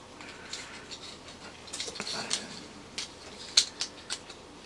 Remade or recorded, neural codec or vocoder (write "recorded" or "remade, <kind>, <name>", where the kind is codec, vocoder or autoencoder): recorded